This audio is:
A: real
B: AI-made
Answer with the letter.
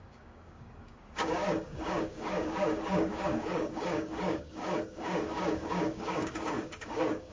B